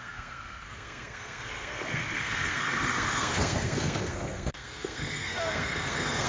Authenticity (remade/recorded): remade